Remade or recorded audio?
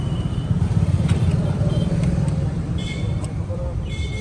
remade